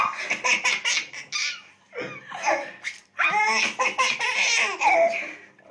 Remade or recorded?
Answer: recorded